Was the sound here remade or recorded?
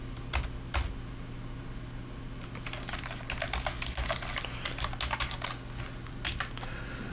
recorded